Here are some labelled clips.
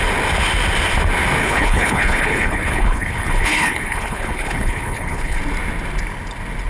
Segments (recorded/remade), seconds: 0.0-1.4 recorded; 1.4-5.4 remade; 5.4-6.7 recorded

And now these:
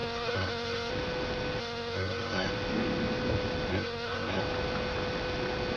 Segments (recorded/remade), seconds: 0.0-0.9 remade; 0.9-1.6 recorded; 1.6-2.5 remade; 2.5-3.7 recorded; 3.7-4.4 remade; 4.4-5.8 recorded

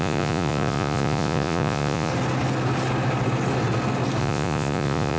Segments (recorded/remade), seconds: 0.0-2.1 remade; 2.1-4.2 recorded; 4.2-5.2 remade